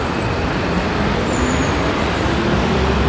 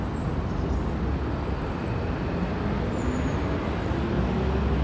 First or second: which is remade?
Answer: first